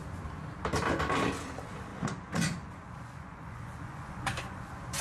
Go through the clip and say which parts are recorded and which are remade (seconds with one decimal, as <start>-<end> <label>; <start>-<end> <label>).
0.0-1.9 recorded; 1.9-5.0 remade